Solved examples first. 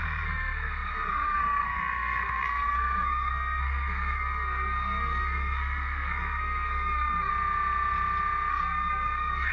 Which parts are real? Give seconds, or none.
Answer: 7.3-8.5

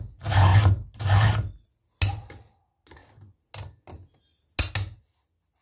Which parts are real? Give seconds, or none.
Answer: 0.0-5.6